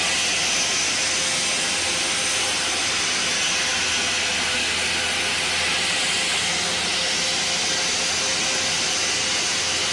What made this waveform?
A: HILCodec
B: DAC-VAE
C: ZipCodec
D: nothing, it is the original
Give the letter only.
D